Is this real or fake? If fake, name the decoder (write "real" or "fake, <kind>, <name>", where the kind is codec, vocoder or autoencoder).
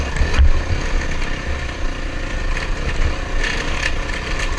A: real